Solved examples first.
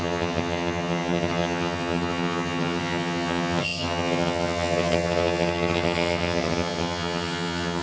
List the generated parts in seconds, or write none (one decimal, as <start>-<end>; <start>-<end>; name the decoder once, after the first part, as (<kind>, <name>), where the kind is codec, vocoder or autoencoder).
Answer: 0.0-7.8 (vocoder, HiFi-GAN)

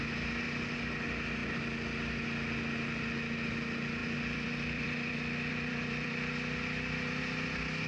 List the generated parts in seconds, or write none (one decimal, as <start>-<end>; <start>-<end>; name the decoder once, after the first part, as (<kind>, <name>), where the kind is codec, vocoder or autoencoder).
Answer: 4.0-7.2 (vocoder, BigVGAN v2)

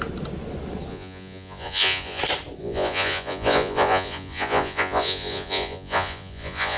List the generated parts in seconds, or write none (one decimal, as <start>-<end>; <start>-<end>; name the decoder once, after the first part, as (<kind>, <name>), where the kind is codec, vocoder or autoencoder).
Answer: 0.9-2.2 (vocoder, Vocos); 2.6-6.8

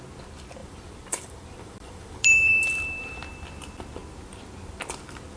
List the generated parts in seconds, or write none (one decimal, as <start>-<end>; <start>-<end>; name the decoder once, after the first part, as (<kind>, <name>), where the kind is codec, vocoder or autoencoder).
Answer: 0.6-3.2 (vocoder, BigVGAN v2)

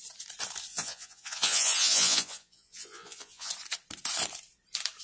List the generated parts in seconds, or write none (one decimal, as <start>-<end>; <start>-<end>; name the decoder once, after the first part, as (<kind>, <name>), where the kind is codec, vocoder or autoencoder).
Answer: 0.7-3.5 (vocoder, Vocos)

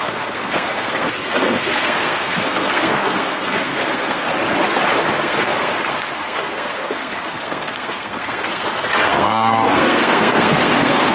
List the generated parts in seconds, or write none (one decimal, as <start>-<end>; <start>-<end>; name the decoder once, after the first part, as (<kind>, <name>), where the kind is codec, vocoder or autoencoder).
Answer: 0.0-4.3 (codec, SNAC); 5.1-11.1

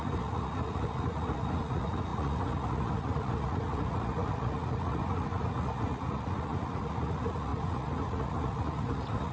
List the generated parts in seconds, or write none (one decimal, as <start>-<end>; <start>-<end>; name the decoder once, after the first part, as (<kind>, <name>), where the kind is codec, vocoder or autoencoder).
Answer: 0.0-9.3 (vocoder, Vocos)